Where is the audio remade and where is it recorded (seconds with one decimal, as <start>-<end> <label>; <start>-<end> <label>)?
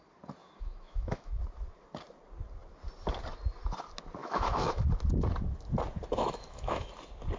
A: 0.0-0.4 recorded; 0.4-1.4 remade; 1.4-4.2 recorded; 4.2-4.8 remade; 4.8-6.1 recorded; 6.1-6.9 remade; 6.9-7.4 recorded